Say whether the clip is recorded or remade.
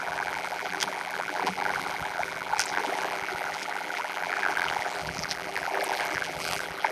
remade